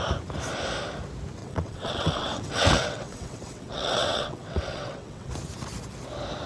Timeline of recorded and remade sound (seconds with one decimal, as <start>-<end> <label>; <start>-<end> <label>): 0.0-1.4 recorded; 1.4-5.3 remade; 5.3-6.5 recorded